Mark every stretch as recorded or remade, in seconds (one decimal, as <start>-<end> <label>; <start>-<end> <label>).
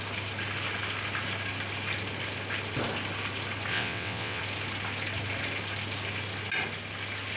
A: 0.0-3.7 recorded; 3.7-4.4 remade; 4.4-7.4 recorded